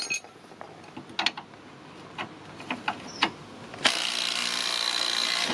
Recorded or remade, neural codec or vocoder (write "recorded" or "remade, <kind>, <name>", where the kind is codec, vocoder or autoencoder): recorded